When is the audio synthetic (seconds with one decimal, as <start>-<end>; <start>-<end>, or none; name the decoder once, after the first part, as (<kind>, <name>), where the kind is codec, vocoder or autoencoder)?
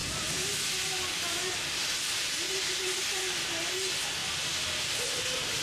0.0-3.4 (vocoder, BigVGAN v2); 4.2-5.6